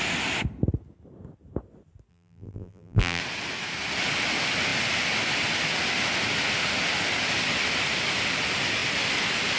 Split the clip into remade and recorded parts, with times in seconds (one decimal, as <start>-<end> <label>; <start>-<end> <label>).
0.0-2.1 recorded; 2.1-3.2 remade; 3.2-9.6 recorded